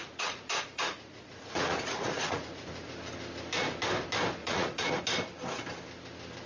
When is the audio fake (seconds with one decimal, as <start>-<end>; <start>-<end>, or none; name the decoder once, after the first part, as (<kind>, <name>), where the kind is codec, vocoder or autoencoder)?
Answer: 0.0-2.9 (vocoder, Vocos); 4.4-5.0